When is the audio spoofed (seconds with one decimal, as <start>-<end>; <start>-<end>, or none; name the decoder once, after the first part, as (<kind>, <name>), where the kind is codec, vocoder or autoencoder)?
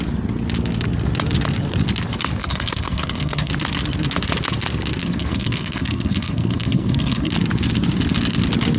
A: 2.4-3.5 (codec, SNAC); 5.0-7.3